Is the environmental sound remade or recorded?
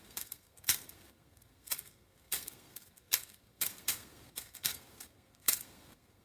remade